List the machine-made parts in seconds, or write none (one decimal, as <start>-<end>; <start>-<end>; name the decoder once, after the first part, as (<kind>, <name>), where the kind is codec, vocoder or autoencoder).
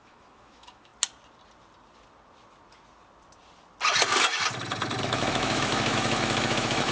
0.0-0.9 (autoencoder, DAC-VAE); 5.0-6.9